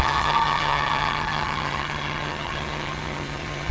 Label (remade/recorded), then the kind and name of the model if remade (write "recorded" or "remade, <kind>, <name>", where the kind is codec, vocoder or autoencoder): remade, vocoder, HiFi-GAN